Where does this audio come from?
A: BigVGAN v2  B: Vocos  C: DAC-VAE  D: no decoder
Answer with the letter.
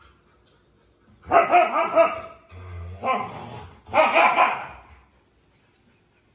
D